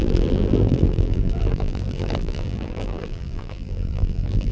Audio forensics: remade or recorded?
remade